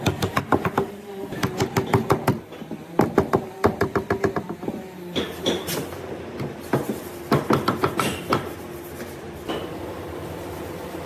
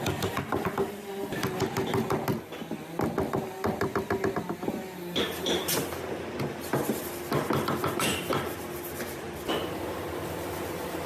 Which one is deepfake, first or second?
first